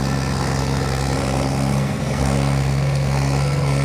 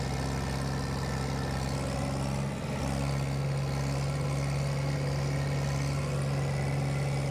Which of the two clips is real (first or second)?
second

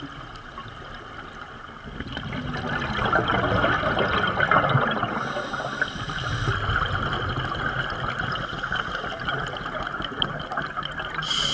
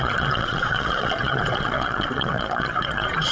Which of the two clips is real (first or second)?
first